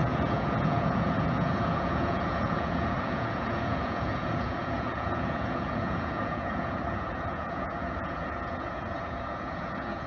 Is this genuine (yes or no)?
no